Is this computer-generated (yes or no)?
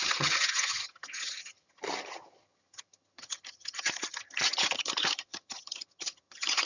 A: yes